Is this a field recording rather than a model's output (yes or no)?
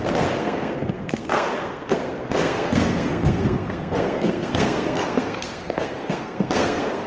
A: no